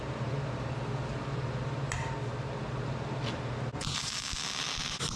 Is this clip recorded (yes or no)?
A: yes